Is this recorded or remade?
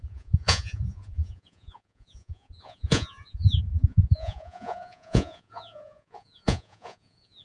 remade